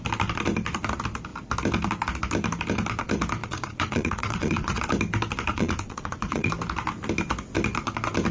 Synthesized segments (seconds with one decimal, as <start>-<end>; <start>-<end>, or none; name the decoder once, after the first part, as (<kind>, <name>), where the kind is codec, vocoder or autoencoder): 3.4-4.8 (vocoder, Vocos); 5.5-6.5